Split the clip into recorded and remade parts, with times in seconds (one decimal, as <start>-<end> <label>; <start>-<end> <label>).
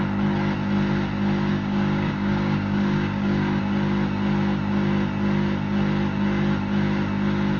0.0-1.5 recorded; 1.5-3.6 remade; 3.6-7.6 recorded